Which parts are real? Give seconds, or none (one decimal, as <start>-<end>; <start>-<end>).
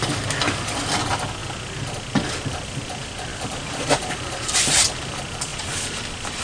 0.0-3.3; 4.8-6.4